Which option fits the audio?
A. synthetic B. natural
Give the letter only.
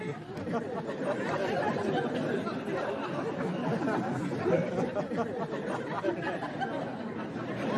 B